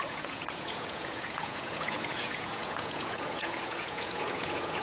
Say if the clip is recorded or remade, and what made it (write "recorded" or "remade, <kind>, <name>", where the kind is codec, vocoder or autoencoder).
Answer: remade, vocoder, Vocos